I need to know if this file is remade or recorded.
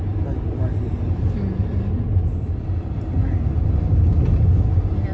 recorded